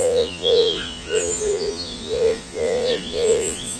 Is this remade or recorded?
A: remade